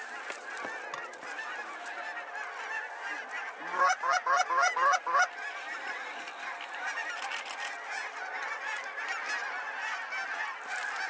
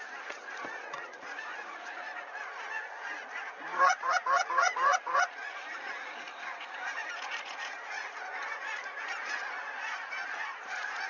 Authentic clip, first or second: first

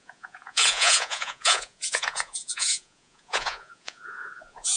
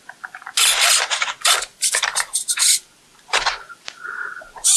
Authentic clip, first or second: second